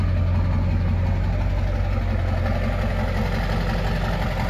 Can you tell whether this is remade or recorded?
recorded